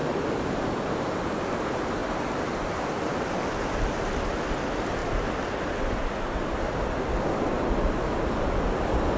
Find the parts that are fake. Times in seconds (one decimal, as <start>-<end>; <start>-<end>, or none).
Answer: 2.0-3.8